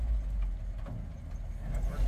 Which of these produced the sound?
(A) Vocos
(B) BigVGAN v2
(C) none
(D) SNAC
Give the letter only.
C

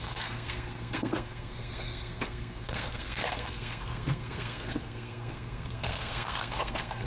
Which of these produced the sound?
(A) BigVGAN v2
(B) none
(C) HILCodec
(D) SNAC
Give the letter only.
D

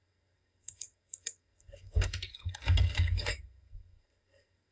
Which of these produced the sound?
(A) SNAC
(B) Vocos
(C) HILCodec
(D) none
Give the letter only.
A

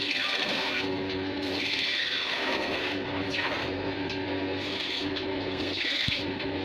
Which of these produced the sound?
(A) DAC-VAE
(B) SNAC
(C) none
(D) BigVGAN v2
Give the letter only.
B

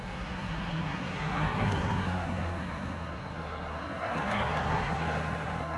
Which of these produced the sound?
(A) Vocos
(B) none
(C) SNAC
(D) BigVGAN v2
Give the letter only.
C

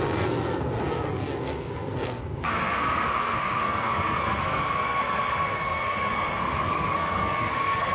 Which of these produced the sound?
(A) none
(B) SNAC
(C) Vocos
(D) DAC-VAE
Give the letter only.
B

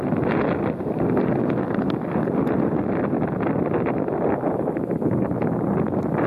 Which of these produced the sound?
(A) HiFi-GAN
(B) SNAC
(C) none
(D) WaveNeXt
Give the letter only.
C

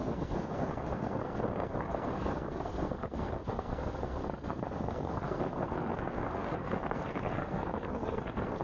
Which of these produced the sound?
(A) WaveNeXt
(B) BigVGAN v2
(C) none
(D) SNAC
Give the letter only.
D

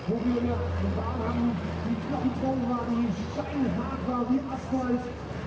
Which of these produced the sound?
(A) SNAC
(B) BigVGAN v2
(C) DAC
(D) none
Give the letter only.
D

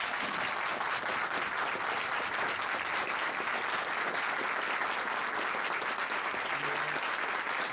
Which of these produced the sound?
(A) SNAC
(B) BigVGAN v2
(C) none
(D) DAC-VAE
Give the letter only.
C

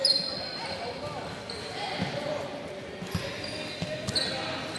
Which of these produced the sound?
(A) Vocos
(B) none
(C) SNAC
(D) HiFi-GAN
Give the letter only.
B